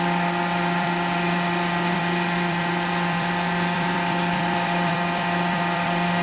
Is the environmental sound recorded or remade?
remade